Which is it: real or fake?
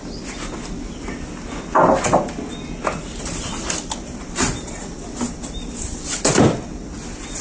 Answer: real